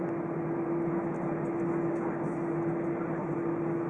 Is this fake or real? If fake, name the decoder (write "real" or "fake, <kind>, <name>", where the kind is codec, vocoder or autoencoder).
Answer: real